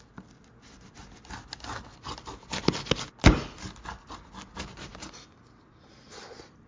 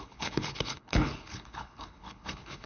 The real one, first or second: first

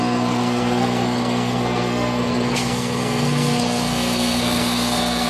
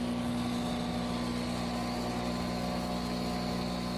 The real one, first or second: second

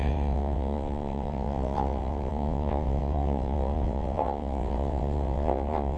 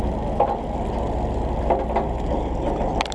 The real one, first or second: second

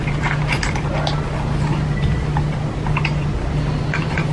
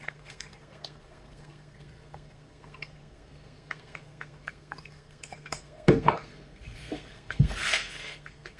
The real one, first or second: first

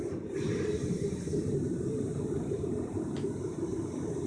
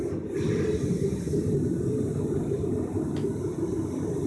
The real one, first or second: second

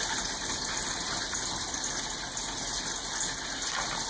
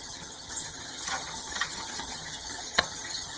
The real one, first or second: first